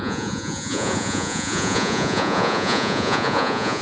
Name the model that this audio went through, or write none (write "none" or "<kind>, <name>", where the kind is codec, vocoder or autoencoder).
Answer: vocoder, Vocos